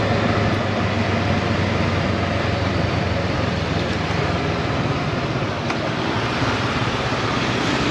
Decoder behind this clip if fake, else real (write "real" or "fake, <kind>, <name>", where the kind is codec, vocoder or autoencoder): real